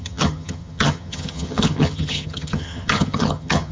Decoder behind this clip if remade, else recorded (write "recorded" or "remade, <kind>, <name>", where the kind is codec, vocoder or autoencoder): remade, vocoder, HiFi-GAN